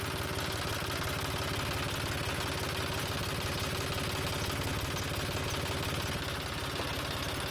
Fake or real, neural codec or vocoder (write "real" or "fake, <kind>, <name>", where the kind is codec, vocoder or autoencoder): real